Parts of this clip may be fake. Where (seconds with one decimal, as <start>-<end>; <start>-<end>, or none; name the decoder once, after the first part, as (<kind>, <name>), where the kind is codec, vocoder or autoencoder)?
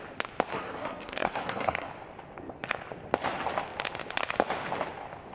0.5-1.9 (codec, SNAC)